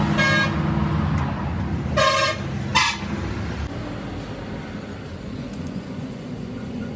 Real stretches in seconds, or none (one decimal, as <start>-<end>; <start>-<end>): 0.0-5.1